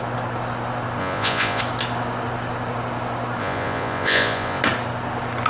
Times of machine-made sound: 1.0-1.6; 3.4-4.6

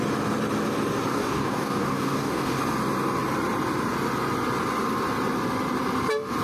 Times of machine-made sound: 1.1-2.6

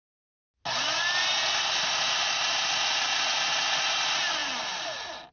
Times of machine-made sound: none

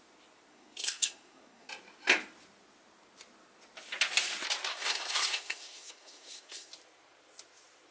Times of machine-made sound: 0.5-1.7; 4.7-6.7